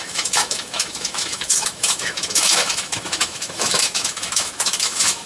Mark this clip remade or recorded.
remade